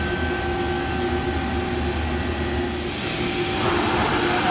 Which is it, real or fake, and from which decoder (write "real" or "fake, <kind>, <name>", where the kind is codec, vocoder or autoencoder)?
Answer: real